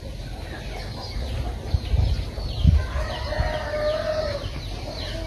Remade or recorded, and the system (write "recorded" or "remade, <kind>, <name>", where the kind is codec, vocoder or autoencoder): recorded